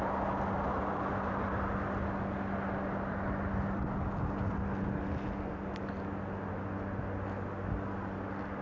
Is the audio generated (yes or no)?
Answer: no